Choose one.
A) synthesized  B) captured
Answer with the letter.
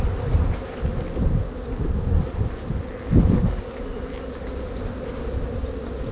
B